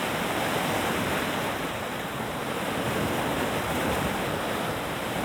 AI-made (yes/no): yes